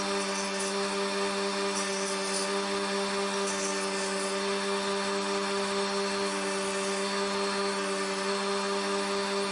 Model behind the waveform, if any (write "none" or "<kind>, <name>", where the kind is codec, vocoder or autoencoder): none